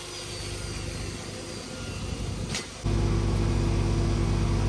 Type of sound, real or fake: real